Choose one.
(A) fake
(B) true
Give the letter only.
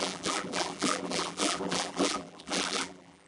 A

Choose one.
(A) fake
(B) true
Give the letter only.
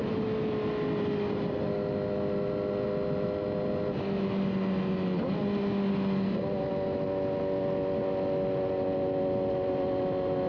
B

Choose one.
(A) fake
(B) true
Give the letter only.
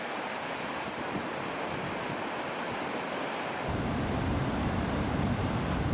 B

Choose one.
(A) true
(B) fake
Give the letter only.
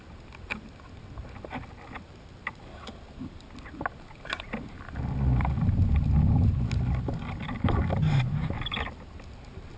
A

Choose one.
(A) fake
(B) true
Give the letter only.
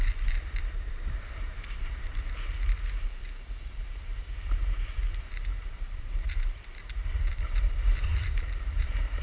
A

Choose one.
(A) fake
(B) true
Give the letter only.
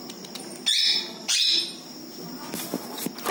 B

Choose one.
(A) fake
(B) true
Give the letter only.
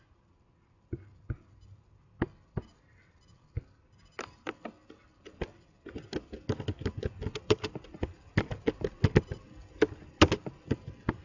B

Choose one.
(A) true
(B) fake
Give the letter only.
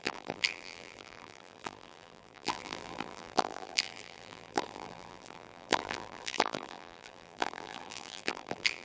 B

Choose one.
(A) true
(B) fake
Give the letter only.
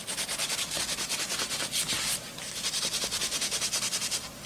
B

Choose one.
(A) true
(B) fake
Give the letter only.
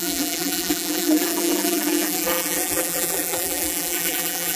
B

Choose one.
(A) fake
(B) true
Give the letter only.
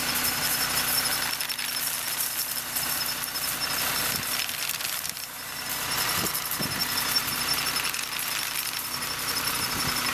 B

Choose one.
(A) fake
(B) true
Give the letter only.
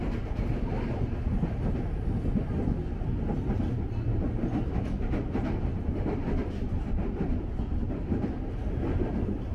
B